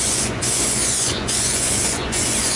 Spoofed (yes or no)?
yes